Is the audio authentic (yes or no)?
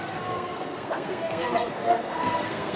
no